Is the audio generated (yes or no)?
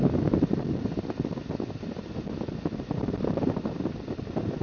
no